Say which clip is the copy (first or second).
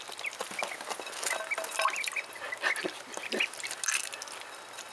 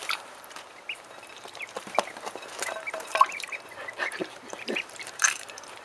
second